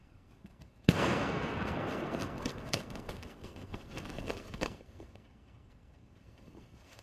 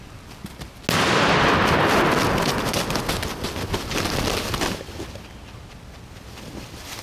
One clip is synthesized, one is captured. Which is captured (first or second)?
second